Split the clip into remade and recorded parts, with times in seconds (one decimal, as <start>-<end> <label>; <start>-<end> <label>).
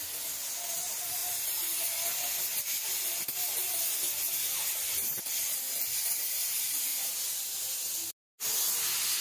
0.0-9.2 recorded